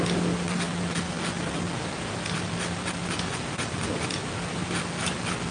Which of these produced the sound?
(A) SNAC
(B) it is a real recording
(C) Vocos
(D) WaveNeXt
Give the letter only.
B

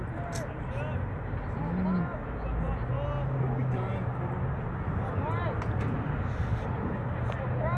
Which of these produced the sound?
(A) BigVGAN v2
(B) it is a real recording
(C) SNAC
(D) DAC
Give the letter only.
B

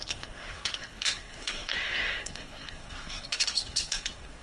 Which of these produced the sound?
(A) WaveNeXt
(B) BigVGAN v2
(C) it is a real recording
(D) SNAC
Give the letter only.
D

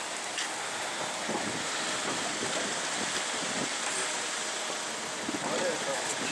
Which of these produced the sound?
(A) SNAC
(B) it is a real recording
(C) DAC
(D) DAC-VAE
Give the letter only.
B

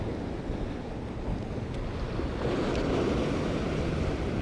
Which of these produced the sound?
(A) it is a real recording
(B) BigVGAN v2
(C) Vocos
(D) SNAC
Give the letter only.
A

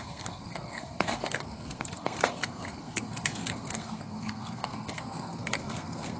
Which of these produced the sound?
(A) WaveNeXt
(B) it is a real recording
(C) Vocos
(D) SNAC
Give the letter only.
D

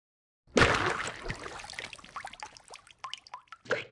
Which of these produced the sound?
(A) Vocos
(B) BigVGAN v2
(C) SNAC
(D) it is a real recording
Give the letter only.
D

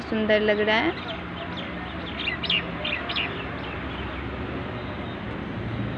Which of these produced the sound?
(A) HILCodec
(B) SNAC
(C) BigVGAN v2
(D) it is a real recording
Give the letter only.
D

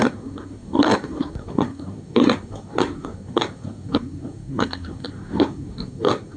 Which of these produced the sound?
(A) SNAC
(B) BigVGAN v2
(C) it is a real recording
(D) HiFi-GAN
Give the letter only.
A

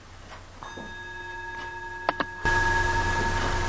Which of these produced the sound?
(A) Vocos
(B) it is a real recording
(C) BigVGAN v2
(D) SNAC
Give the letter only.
B